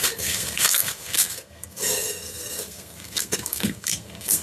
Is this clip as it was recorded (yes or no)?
no